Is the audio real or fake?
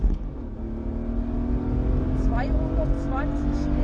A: real